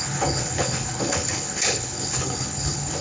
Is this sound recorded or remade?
remade